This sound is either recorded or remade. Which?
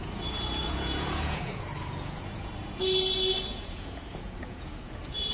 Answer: remade